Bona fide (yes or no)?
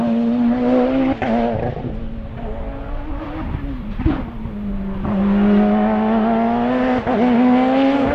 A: yes